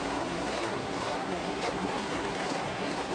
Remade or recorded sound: remade